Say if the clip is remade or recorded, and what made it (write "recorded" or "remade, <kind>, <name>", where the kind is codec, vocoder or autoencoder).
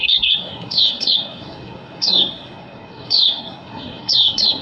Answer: remade, codec, SNAC